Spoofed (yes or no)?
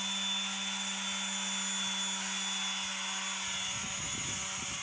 no